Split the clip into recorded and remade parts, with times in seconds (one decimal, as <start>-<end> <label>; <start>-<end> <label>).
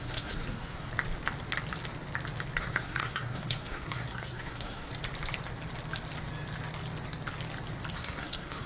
0.0-0.9 remade; 0.9-2.6 recorded; 2.6-4.9 remade; 4.9-7.9 recorded; 7.9-8.7 remade